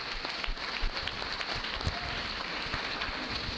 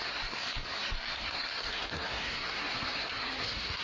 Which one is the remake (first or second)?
second